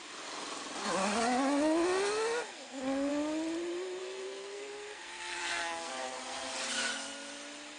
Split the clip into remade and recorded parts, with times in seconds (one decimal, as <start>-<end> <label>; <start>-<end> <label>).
0.0-2.5 recorded; 2.5-3.1 remade; 3.1-4.0 recorded; 4.0-6.5 remade; 6.5-7.8 recorded